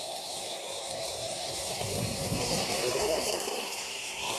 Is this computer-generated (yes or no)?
yes